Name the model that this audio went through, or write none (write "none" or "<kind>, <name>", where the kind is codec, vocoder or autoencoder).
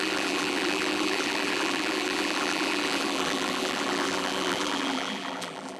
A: vocoder, BigVGAN v2